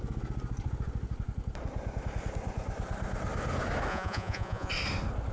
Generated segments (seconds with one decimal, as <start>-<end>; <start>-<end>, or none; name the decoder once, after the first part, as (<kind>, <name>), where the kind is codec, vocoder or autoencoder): 3.9-4.7 (vocoder, Vocos)